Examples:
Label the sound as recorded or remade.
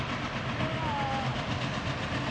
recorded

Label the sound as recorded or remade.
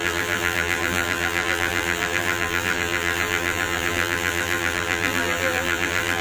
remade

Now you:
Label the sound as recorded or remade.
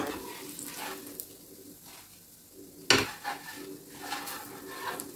recorded